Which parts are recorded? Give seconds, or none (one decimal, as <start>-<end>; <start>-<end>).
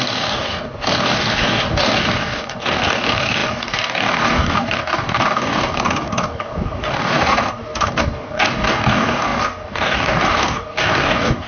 none